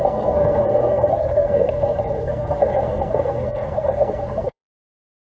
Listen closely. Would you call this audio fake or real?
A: fake